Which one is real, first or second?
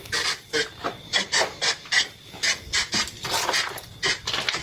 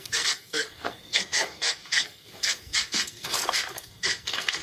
first